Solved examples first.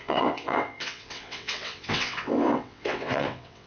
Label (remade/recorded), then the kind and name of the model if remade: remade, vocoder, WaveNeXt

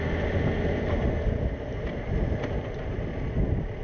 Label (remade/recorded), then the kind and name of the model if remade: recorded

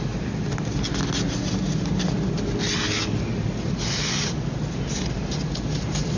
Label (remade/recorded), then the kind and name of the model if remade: recorded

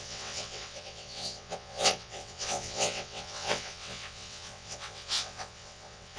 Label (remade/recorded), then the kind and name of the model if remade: remade, vocoder, WaveNeXt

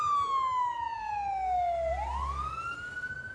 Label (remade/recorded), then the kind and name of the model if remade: recorded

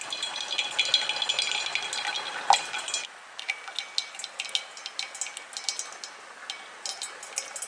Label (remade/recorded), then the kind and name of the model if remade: recorded